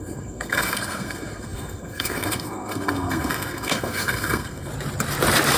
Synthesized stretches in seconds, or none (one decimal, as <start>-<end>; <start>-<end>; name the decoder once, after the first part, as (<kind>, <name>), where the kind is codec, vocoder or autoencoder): 0.0-4.7 (codec, SNAC)